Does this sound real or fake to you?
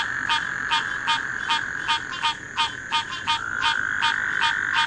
real